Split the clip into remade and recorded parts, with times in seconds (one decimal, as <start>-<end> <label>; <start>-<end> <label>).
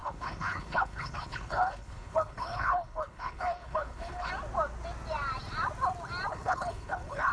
0.0-4.3 remade; 4.3-6.3 recorded; 6.3-7.3 remade